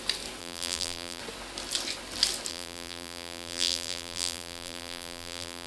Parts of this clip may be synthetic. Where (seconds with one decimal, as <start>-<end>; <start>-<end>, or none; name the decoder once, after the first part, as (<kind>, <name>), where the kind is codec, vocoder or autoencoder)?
0.4-1.2 (vocoder, BigVGAN v2); 2.5-5.7